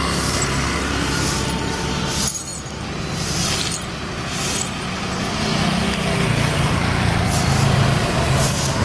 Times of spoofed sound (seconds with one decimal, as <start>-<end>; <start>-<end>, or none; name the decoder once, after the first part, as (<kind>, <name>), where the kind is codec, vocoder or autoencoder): none